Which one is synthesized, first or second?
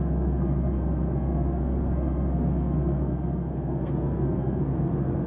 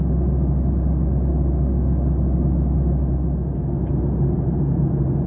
first